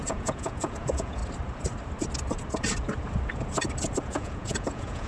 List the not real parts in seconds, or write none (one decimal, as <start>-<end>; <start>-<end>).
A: 0.0-1.2; 4.0-5.1